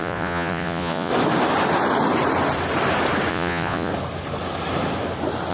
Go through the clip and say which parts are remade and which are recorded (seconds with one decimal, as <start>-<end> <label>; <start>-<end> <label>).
0.0-1.1 remade; 1.1-3.3 recorded; 3.3-3.9 remade; 3.9-5.5 recorded